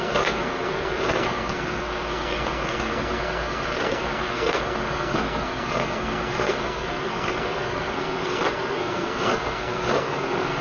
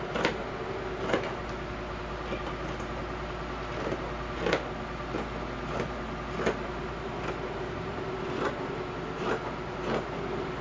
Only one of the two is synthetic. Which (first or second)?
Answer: first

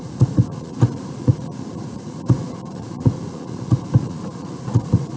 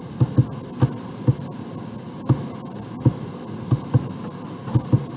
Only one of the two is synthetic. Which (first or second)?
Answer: first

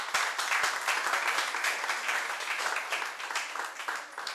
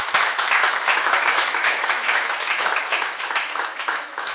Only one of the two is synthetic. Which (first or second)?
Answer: second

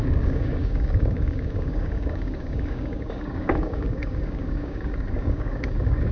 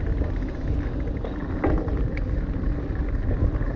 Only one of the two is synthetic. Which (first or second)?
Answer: first